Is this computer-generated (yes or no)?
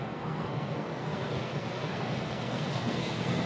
yes